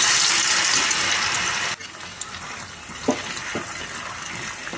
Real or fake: real